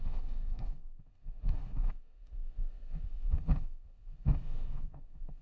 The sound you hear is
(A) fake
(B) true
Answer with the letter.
A